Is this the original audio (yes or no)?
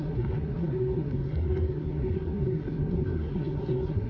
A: no